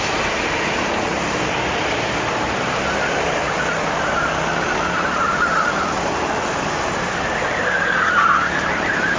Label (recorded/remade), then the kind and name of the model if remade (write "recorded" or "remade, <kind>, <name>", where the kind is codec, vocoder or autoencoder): recorded